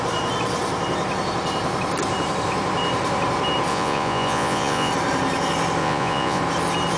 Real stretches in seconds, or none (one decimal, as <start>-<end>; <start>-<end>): 0.0-3.7; 4.9-5.8; 6.4-7.0